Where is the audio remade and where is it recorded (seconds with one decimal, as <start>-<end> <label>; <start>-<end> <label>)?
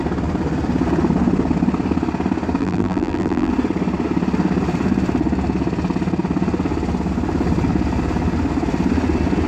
0.0-2.6 recorded; 2.6-3.5 remade; 3.5-9.5 recorded